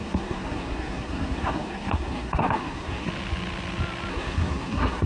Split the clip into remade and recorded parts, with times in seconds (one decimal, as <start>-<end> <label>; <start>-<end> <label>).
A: 0.0-3.1 remade; 3.1-4.1 recorded; 4.1-5.1 remade